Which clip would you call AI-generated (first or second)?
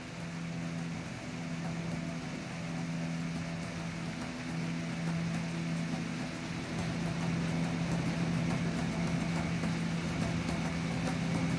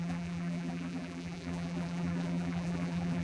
second